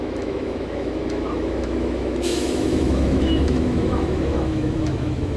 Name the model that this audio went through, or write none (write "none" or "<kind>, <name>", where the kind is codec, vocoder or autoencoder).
autoencoder, DAC-VAE